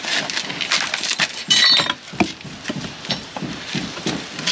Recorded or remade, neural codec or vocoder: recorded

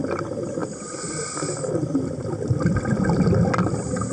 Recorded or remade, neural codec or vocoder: recorded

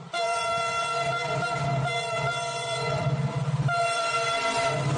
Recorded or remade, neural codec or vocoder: remade, vocoder, BigVGAN v2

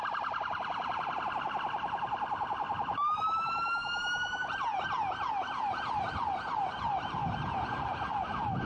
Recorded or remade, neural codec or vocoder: recorded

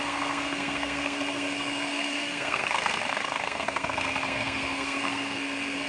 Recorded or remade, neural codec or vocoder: remade, codec, SNAC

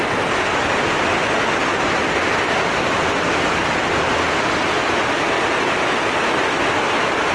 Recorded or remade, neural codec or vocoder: recorded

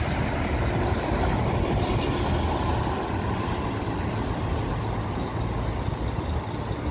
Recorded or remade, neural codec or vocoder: recorded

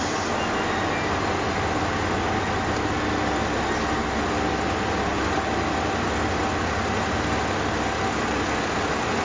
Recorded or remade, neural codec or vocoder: recorded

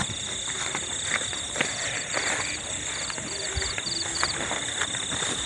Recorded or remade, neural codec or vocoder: recorded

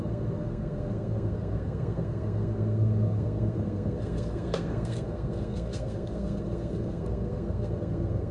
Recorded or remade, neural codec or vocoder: remade, codec, SNAC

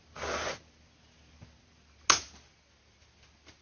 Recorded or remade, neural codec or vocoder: recorded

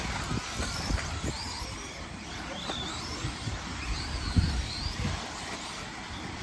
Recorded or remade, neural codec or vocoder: remade, vocoder, BigVGAN v2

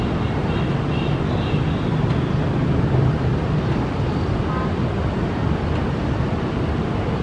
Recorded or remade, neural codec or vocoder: recorded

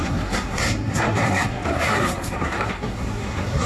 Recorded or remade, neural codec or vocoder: remade, codec, SNAC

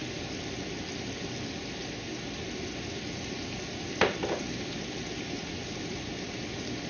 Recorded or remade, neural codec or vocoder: recorded